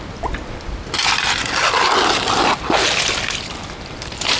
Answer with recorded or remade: recorded